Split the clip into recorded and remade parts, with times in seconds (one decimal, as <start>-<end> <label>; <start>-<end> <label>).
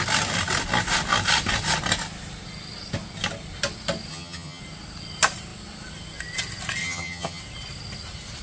0.0-4.1 recorded; 4.1-4.6 remade; 4.6-6.8 recorded; 6.8-7.4 remade; 7.4-8.4 recorded